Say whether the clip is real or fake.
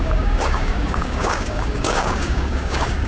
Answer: fake